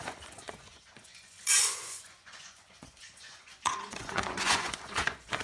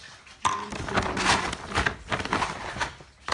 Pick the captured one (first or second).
second